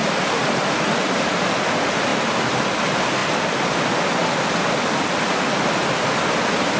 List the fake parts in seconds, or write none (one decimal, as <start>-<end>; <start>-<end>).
0.0-1.3; 2.1-2.7